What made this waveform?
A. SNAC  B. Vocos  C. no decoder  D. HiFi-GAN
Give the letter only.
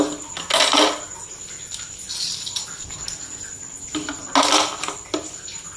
C